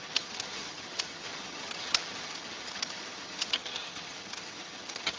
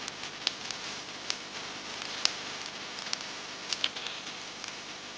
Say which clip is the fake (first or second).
first